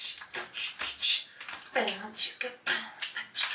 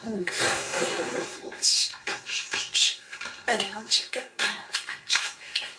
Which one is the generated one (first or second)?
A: second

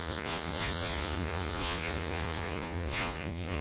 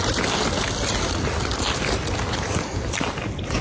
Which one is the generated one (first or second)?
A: first